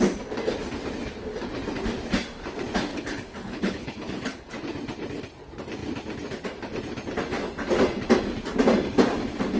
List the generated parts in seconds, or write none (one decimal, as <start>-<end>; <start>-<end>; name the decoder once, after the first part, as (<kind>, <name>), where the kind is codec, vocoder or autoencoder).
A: 2.9-4.4 (codec, HILCodec)